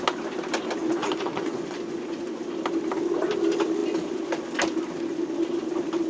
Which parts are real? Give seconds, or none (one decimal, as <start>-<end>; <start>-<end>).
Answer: 0.0-0.8; 2.4-6.1